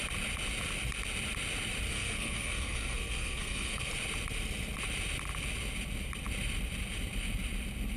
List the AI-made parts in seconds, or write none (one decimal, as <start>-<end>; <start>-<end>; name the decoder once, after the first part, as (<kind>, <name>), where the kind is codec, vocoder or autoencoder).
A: 1.9-3.9 (codec, SNAC)